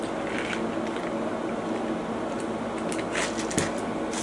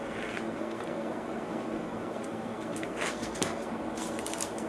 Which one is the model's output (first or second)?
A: second